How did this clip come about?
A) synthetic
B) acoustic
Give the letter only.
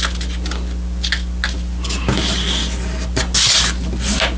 B